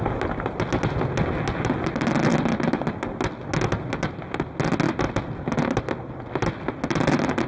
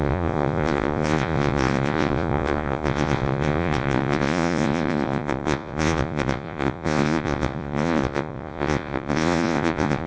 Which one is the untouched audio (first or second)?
first